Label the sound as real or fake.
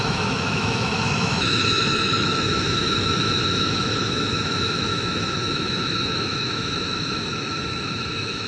fake